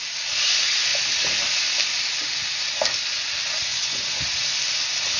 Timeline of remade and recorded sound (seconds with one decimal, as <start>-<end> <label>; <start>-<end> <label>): 0.0-3.7 recorded; 3.7-4.2 remade; 4.2-5.2 recorded